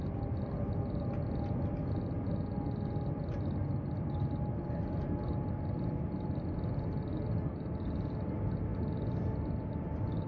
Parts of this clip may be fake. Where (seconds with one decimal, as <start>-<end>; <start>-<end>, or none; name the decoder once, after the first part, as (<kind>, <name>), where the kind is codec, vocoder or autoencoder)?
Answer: none